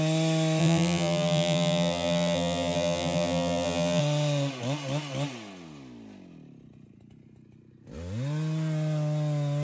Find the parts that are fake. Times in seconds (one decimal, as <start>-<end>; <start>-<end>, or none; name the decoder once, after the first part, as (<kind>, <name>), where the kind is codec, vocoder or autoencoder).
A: 0.6-4.0 (vocoder, BigVGAN v2)